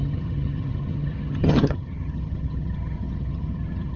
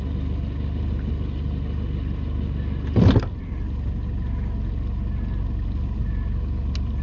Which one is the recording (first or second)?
second